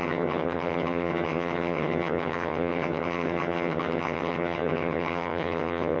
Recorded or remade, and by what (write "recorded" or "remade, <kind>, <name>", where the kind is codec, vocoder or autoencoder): remade, vocoder, HiFi-GAN